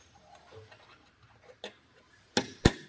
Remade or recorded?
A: recorded